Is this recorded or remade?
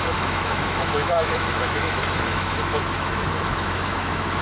remade